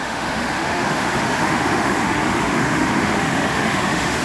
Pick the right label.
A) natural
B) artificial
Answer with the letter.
B